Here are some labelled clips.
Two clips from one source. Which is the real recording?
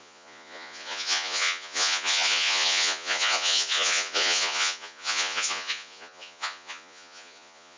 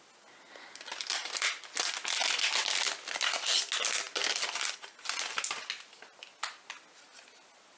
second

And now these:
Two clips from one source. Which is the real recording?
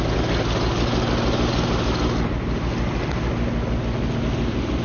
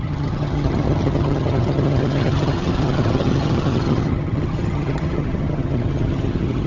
first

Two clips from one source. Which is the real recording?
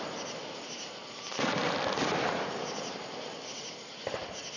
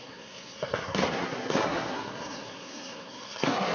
first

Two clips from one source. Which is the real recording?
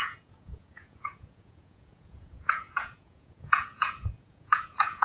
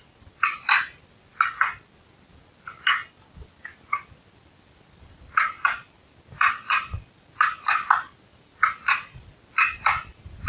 second